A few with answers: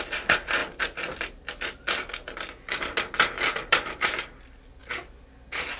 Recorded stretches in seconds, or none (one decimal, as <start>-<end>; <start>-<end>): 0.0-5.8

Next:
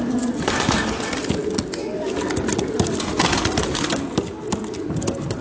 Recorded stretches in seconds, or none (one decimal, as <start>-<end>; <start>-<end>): 0.0-5.4

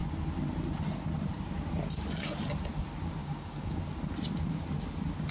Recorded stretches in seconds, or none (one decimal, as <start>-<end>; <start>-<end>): 0.0-3.2; 3.8-5.3

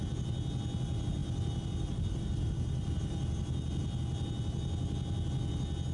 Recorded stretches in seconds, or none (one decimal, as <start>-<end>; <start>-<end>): 0.0-5.9

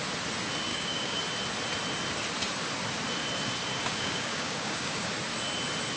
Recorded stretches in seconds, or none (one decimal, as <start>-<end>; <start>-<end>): 0.0-0.7; 1.2-3.9; 5.1-6.0

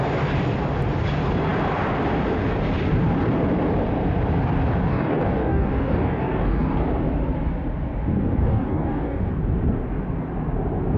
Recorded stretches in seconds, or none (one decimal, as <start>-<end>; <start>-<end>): 0.0-4.9; 6.8-8.4; 9.3-11.0

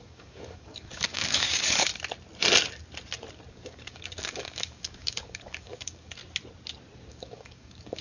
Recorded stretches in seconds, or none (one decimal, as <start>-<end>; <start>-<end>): 1.9-3.5; 6.2-7.1

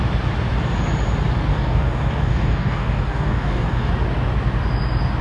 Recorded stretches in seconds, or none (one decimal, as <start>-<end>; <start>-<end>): 0.0-1.5; 3.9-5.2